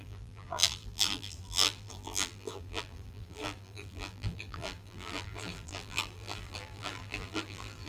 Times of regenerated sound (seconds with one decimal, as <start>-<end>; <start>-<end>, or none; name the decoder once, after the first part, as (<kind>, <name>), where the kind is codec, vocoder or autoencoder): 0.0-7.9 (vocoder, BigVGAN v2)